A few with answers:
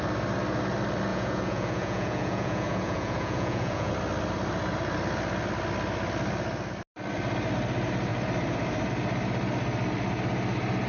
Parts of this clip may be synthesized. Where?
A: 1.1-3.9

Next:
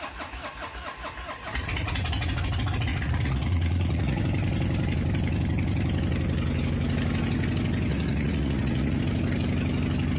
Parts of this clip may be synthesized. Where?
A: 2.9-4.2; 7.9-9.0